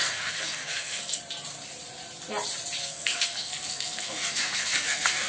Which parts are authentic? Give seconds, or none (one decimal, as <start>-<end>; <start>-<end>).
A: 1.2-2.8